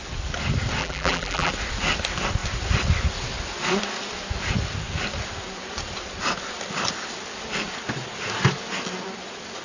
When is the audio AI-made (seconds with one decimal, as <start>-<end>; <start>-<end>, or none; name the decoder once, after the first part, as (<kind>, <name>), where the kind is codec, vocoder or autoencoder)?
0.8-1.5 (vocoder, BigVGAN v2)